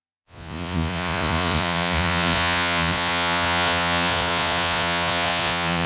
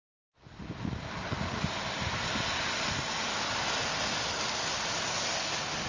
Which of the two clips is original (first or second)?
second